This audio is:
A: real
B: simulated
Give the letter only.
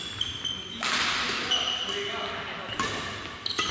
A